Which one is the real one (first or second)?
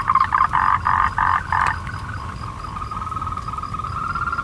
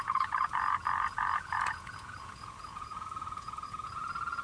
first